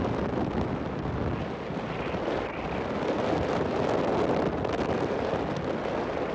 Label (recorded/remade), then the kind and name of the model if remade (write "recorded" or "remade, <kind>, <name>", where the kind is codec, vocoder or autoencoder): recorded